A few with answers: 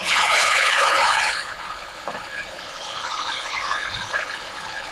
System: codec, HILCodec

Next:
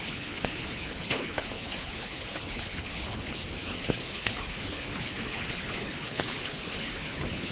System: codec, HILCodec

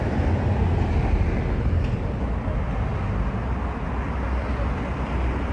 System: none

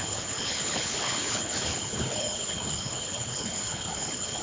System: codec, HILCodec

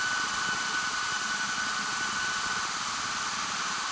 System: none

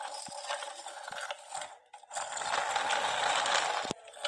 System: none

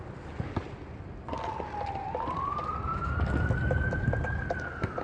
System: none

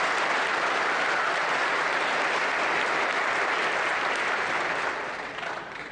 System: none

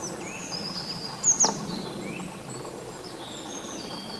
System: none